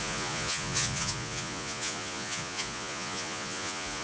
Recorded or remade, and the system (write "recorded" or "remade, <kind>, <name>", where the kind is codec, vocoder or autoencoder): remade, vocoder, Vocos